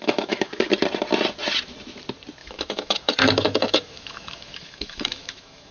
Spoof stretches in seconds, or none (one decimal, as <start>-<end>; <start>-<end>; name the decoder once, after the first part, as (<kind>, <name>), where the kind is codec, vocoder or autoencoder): 0.0-0.7 (autoencoder, DAC-VAE); 2.4-5.7